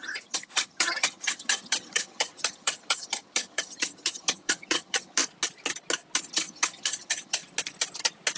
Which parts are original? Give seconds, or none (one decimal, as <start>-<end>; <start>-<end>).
5.2-6.3; 7.4-8.4